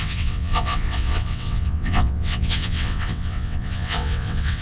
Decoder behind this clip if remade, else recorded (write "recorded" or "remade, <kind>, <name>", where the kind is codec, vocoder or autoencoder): remade, vocoder, WaveNeXt